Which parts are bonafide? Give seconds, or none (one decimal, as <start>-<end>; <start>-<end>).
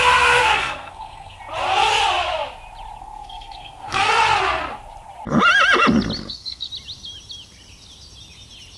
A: 0.0-0.4; 1.4-3.0; 4.1-6.2; 6.7-8.8